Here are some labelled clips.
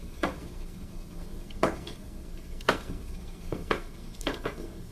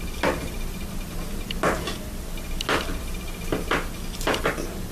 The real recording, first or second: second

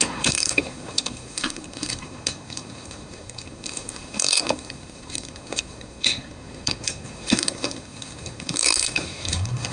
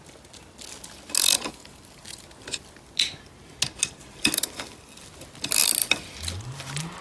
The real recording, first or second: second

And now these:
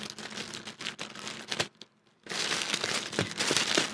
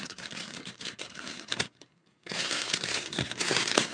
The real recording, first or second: first